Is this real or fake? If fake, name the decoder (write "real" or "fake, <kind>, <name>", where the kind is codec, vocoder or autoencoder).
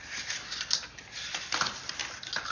real